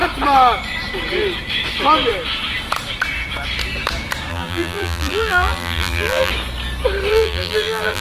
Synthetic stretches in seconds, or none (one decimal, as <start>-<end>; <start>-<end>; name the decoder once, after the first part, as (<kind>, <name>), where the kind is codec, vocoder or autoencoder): 4.3-6.3 (vocoder, BigVGAN v2); 7.1-8.0